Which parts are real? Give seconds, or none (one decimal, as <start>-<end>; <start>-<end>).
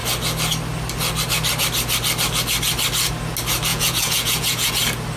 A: 0.0-3.7; 4.7-5.2